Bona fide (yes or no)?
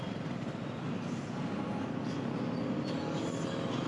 yes